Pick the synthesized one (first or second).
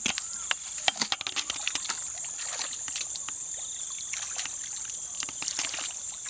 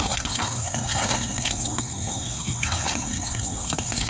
second